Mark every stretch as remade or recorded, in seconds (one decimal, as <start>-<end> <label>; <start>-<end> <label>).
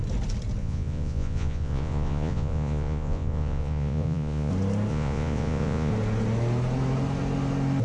0.0-0.6 recorded; 0.6-4.5 remade; 4.5-4.9 recorded; 4.9-5.9 remade; 5.9-7.8 recorded